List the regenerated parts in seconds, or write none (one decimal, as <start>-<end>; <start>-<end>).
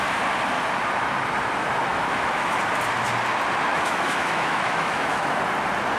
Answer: 1.9-2.6; 3.7-5.4